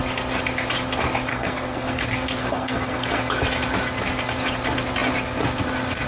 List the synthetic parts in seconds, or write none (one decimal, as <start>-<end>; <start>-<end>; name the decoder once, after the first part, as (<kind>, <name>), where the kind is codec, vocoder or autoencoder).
1.3-2.0 (codec, SNAC); 2.4-3.2